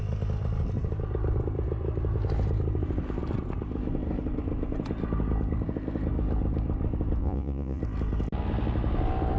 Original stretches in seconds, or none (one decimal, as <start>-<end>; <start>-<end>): 0.0-7.2; 7.8-9.4

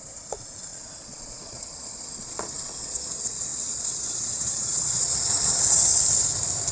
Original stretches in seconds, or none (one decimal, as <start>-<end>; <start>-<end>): 5.9-6.7

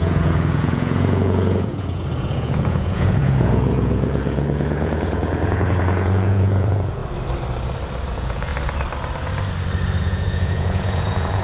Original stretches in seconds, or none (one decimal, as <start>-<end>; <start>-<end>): 7.0-8.1; 8.5-10.0

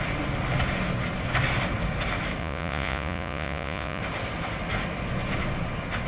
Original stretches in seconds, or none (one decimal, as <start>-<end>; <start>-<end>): 0.0-2.4; 4.0-6.1

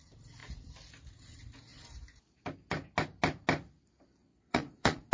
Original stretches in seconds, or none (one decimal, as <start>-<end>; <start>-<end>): 0.0-4.3